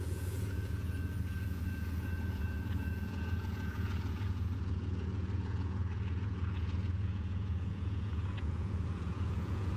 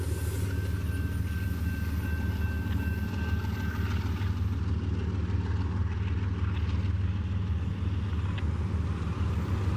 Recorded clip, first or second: second